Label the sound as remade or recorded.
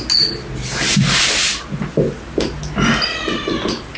recorded